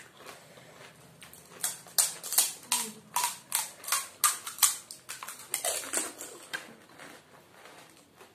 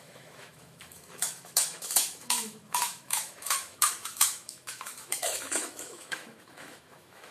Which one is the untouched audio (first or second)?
first